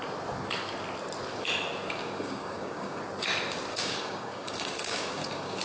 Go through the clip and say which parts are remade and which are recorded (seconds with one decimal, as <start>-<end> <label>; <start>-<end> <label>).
0.0-2.0 recorded; 2.0-3.0 remade; 3.0-3.7 recorded; 3.7-5.6 remade